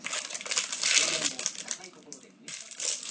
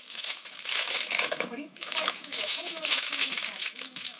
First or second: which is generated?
second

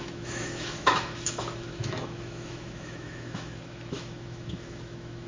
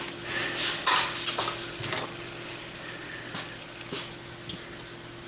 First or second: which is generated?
first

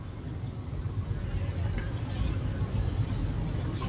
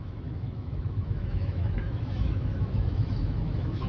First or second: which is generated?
second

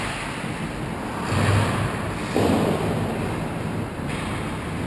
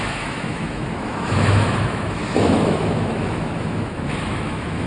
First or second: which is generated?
second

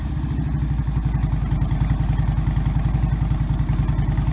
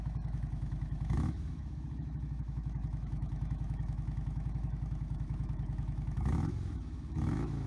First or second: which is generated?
second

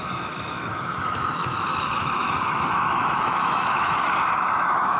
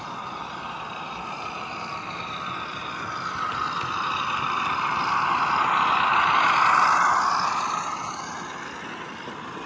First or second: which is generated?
first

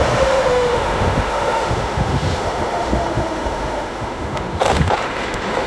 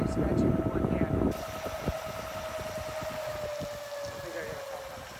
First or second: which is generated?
first